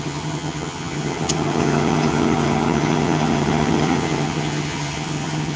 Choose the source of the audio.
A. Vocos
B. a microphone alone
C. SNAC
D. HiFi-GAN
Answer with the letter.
D